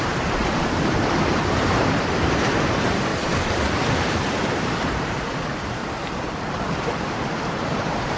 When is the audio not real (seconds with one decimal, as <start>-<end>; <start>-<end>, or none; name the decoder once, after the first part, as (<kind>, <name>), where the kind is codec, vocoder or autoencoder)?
0.0-3.1 (vocoder, BigVGAN v2); 3.9-5.8; 6.8-8.2